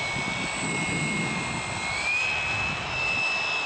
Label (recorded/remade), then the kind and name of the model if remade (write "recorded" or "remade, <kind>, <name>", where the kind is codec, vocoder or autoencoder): recorded